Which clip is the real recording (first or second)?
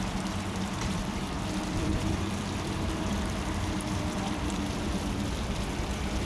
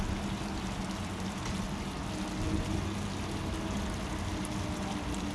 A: second